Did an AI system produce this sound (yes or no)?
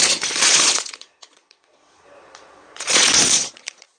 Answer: yes